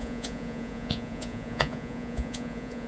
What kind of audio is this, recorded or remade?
remade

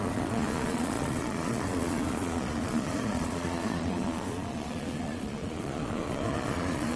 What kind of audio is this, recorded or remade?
remade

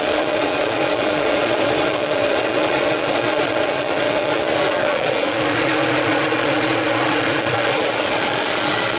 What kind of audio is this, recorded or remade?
remade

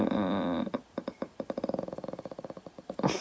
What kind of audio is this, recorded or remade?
recorded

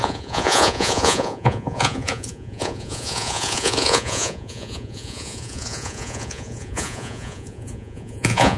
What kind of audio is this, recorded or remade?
remade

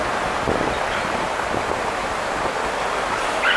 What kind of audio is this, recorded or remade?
recorded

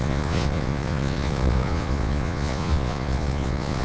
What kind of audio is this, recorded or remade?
remade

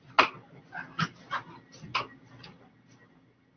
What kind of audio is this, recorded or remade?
recorded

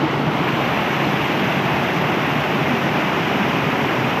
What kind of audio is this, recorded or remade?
recorded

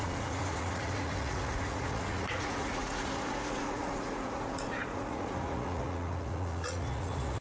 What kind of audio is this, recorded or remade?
remade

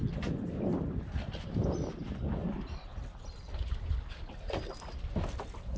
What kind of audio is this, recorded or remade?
recorded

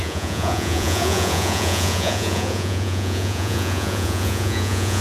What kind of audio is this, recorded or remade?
remade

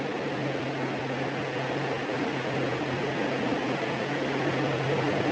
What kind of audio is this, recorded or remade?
recorded